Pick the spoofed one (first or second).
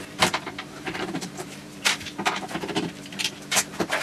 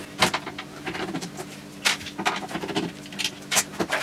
first